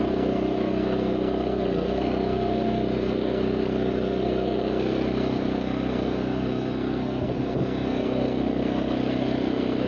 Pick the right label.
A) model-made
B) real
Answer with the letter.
A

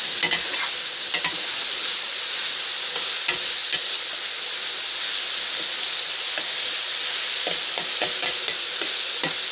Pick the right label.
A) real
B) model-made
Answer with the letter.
A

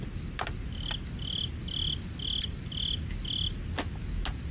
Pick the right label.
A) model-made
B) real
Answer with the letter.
B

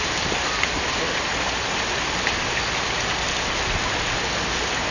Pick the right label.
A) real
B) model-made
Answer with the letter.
A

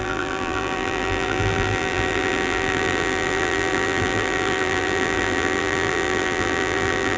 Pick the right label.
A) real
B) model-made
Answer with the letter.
B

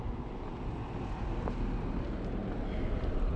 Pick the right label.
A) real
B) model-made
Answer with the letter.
A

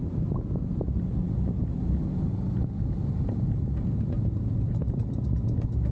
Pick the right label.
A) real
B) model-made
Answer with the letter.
A